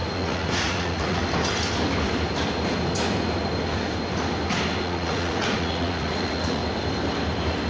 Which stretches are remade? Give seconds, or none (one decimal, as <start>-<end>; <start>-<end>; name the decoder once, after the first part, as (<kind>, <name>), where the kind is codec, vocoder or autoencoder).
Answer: 0.0-1.2 (vocoder, Vocos); 4.8-6.6